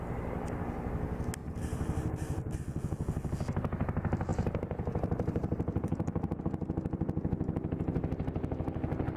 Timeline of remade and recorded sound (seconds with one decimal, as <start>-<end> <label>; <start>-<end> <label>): 0.0-1.4 recorded; 1.4-2.6 remade; 2.6-4.3 recorded; 4.3-6.4 remade; 6.4-9.2 recorded